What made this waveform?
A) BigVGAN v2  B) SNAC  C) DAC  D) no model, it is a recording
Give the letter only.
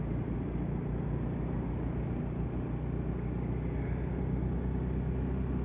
D